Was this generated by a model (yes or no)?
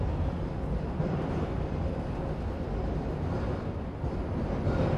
no